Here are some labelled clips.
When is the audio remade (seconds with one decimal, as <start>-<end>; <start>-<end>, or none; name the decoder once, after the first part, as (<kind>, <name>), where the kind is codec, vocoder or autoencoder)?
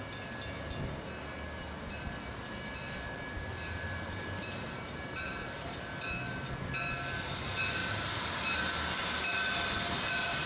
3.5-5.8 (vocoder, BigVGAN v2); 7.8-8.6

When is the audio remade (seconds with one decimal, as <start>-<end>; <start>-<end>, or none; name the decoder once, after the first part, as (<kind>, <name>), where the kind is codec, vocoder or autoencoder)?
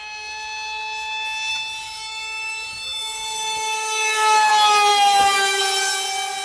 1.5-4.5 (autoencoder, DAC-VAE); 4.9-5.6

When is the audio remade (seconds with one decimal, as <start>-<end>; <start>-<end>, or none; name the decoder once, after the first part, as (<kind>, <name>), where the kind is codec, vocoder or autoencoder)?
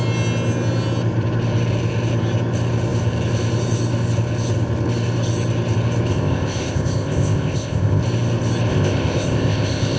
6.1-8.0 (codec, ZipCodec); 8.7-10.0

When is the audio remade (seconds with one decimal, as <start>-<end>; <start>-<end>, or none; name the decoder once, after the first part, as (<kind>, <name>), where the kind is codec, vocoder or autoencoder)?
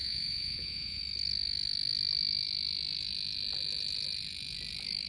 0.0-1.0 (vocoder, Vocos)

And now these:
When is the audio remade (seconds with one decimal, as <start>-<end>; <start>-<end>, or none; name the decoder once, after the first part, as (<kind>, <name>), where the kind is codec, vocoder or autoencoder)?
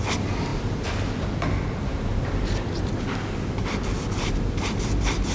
none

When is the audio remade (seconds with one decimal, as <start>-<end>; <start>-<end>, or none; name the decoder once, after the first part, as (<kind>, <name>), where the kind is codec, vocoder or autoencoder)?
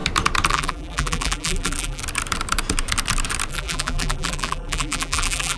0.5-2.0 (vocoder, BigVGAN v2); 3.5-5.6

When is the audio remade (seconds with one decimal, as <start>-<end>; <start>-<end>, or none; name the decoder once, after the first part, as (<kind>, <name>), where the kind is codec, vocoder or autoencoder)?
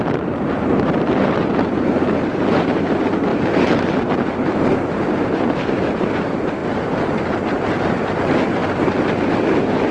0.0-8.6 (vocoder, BigVGAN v2); 9.3-9.9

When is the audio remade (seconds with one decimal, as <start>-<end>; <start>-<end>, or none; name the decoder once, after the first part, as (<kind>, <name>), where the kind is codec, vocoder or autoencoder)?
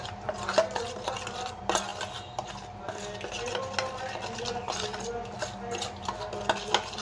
none